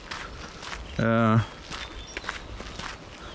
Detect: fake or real real